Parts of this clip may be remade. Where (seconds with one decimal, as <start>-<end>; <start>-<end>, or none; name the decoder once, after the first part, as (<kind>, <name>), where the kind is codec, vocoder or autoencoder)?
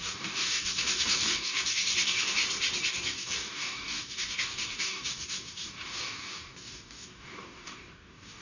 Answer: 0.0-2.4 (codec, DAC); 2.9-8.4